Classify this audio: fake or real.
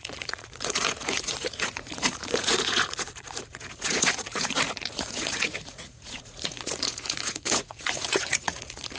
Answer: fake